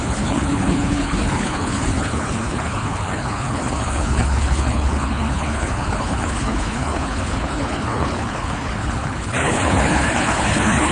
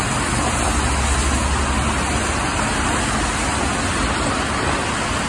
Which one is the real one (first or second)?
second